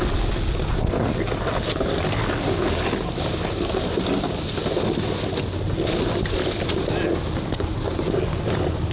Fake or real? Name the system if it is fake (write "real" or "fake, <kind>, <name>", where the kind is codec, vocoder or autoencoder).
real